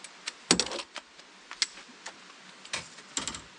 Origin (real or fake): real